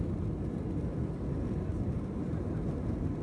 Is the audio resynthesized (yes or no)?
no